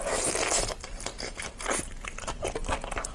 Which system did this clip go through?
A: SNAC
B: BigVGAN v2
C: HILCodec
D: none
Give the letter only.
D